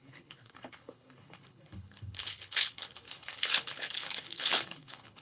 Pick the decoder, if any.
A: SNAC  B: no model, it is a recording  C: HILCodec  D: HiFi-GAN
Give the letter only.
C